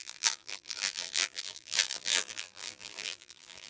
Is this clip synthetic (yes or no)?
yes